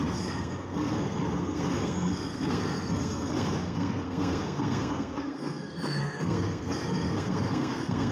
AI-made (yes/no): yes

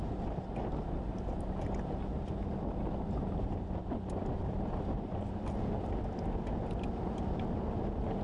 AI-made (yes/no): no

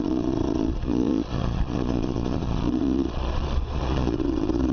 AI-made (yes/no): yes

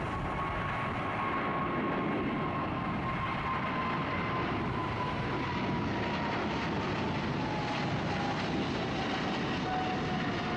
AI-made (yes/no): no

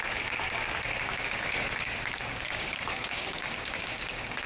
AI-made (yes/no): yes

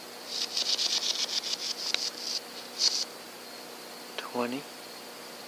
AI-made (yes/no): no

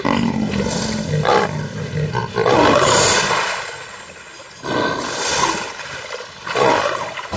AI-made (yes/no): no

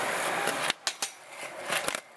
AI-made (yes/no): no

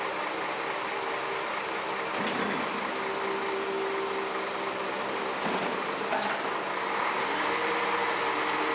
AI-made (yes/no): no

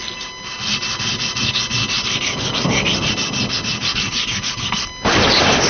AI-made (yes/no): no